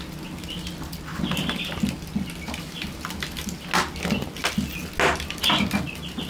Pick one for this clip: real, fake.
real